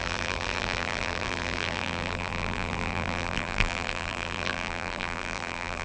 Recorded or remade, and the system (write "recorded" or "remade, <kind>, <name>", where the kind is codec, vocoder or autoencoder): remade, vocoder, BigVGAN v2